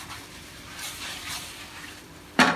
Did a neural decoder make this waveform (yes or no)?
yes